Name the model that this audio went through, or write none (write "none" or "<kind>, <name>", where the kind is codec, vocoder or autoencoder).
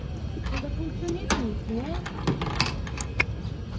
none